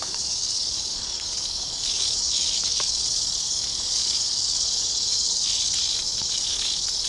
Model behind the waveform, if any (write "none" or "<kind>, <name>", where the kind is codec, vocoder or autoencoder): codec, DAC